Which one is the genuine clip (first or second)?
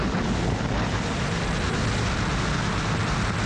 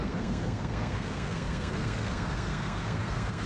first